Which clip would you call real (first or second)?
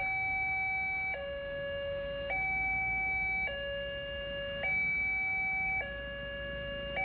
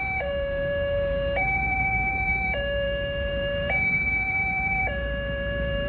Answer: first